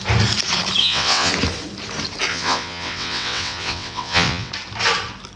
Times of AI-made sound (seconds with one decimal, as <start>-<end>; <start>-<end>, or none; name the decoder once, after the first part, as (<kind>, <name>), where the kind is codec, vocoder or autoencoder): 0.8-1.3 (vocoder, WaveNeXt); 2.3-4.5